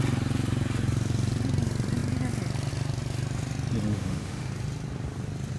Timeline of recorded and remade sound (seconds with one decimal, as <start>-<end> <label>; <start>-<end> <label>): 0.0-3.9 recorded; 3.9-4.5 remade; 4.5-5.6 recorded